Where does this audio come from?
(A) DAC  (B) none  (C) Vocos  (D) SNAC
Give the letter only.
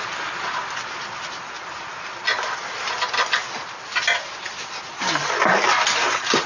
B